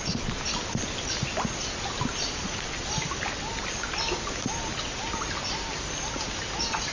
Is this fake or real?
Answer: real